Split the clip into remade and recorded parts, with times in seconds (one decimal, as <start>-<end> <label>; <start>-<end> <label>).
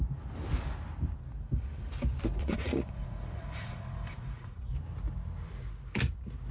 0.0-2.4 recorded; 2.4-4.7 remade; 4.7-6.5 recorded